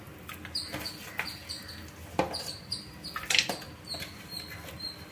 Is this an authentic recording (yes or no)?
yes